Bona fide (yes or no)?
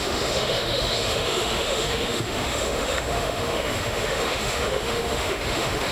no